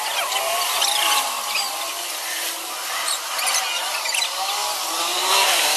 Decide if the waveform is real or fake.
fake